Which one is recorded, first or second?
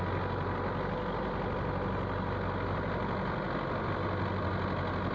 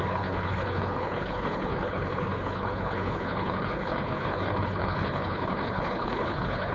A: first